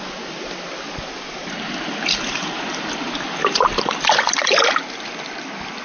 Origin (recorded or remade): recorded